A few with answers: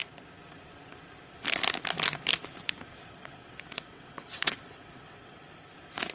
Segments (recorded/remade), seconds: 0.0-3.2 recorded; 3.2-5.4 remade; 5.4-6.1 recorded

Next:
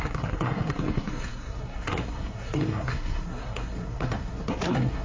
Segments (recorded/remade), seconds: 0.0-5.0 remade

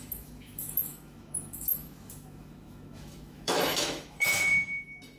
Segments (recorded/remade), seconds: 0.0-4.5 remade; 4.5-5.2 recorded